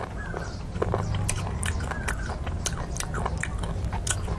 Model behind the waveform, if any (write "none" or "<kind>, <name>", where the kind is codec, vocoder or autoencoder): none